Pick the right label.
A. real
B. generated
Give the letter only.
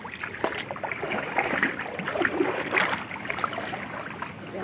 A